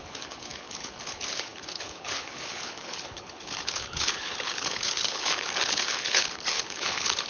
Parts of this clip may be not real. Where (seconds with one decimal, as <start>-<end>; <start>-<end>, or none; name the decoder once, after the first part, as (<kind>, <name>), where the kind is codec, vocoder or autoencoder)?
0.0-7.3 (codec, HILCodec)